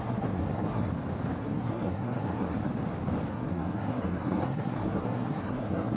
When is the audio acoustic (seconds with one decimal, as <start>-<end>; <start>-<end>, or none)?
0.9-1.4; 2.7-3.3